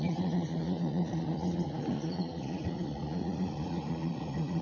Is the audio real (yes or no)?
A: no